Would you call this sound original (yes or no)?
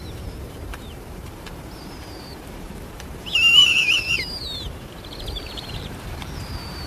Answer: no